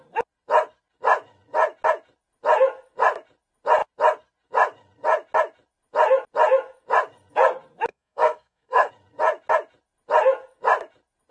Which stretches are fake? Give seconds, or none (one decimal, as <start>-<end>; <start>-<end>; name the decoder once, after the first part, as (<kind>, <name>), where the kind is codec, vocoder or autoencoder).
7.9-8.9 (codec, SNAC)